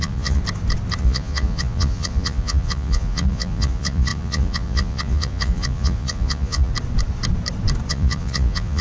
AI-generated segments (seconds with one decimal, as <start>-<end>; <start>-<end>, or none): 0.0-0.4; 1.0-6.7; 7.9-8.8